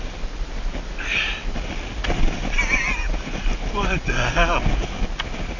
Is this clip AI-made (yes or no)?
no